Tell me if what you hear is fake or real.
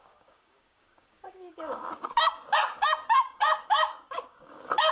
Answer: fake